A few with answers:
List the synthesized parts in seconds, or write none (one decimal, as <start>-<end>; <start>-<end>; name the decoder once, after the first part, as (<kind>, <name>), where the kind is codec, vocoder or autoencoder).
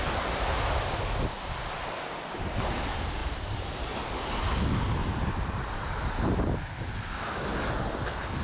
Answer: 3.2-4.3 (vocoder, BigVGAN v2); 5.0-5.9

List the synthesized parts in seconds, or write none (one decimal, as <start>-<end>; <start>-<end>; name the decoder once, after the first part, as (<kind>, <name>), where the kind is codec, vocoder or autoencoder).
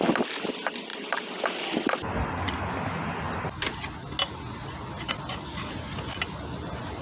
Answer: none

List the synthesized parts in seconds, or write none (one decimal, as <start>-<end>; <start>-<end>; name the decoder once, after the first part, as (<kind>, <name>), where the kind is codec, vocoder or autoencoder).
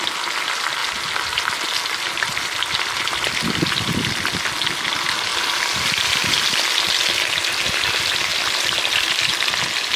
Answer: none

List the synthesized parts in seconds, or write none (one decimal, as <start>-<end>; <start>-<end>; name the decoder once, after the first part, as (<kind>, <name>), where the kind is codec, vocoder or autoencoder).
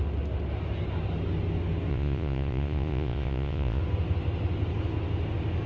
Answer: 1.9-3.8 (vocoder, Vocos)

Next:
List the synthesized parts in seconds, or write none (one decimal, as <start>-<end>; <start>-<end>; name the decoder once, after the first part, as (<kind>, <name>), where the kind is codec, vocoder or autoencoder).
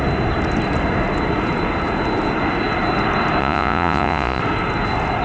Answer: 3.4-4.4 (vocoder, Vocos)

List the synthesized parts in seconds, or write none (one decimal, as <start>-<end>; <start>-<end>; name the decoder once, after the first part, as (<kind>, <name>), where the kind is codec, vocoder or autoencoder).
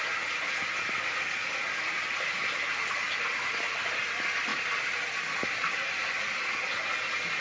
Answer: none